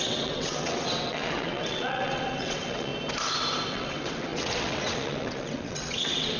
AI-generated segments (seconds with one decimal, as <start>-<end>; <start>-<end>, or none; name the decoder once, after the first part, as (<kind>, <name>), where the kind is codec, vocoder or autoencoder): 0.0-2.9 (vocoder, WaveNeXt); 3.7-6.4